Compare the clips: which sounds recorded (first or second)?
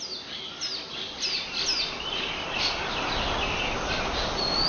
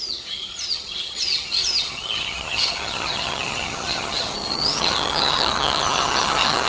first